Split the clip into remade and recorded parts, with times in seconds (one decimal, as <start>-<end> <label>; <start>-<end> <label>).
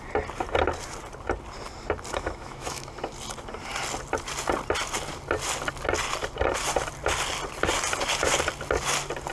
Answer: 0.0-2.1 recorded; 2.1-2.9 remade; 2.9-9.3 recorded